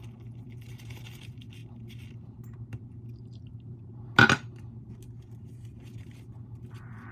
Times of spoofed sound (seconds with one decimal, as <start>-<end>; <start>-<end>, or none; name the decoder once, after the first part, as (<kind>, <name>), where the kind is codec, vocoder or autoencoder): none